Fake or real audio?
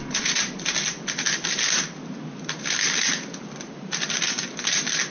real